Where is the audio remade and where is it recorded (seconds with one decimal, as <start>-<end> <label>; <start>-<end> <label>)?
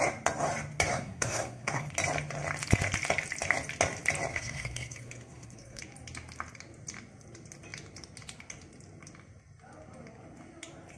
0.0-0.9 recorded; 0.9-1.9 remade; 1.9-4.3 recorded; 4.3-5.8 remade; 5.8-11.0 recorded